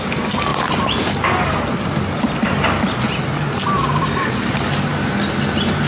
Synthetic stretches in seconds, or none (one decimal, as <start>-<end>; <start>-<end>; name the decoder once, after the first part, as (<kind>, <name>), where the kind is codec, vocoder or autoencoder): none